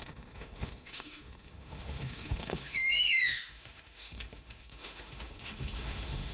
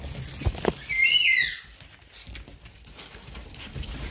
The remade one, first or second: first